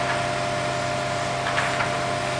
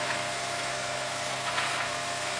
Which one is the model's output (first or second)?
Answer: second